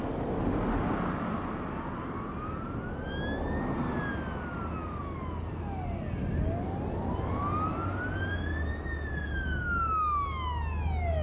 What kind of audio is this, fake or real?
real